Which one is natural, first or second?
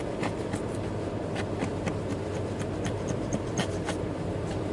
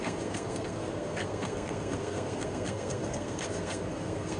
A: first